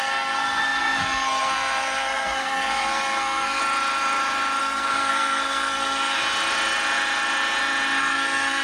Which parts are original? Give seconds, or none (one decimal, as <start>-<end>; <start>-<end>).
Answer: 3.6-4.6; 6.2-8.0